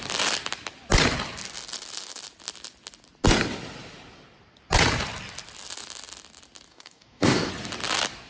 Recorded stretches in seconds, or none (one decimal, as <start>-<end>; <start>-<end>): 0.0-6.7; 7.5-8.3